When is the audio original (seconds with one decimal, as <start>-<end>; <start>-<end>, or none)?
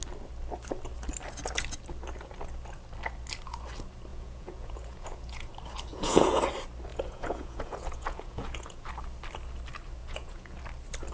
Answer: 0.0-4.1; 5.5-5.9; 6.4-6.9; 8.9-10.0; 10.6-11.1